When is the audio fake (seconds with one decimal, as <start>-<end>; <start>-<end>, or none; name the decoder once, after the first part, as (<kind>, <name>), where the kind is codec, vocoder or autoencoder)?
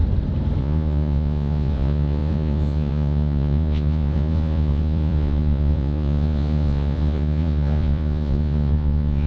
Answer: 0.6-9.3 (vocoder, Vocos)